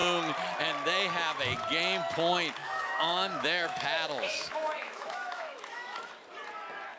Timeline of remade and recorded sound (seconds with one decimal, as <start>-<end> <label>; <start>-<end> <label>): 0.0-2.6 recorded; 2.6-6.1 remade; 6.1-7.0 recorded